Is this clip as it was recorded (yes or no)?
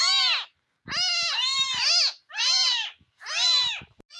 yes